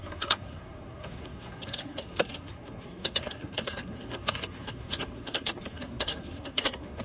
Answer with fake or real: fake